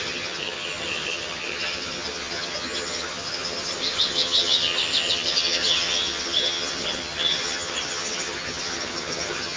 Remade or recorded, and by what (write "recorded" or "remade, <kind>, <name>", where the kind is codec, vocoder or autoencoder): remade, vocoder, HiFi-GAN